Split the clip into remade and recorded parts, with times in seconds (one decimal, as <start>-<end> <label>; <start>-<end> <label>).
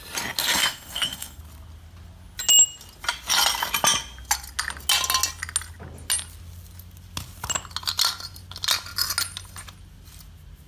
0.0-0.4 recorded; 0.4-1.4 remade; 1.4-10.7 recorded